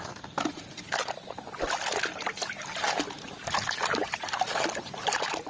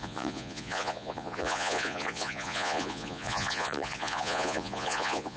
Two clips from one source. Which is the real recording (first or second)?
first